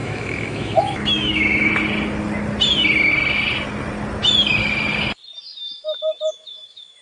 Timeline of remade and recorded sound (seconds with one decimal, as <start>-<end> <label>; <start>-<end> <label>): 0.0-1.7 remade; 1.7-5.5 recorded; 5.5-7.0 remade